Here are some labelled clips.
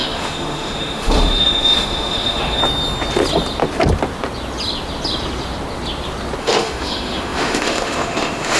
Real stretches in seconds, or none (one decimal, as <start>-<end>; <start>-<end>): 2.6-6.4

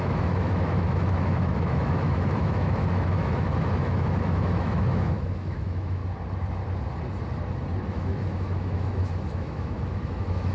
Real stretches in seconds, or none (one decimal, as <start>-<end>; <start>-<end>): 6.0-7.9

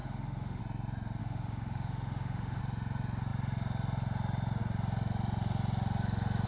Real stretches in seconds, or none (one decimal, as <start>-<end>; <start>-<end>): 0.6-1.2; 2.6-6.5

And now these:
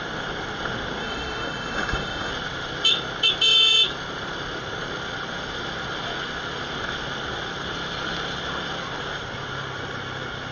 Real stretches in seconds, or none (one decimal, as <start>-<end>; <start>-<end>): 0.0-1.0; 2.3-10.5

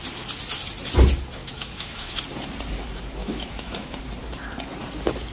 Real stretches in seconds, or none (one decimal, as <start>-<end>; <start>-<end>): 0.0-1.4; 2.2-3.2; 4.0-5.3